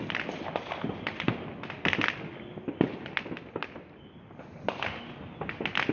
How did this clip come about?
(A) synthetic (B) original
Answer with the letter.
B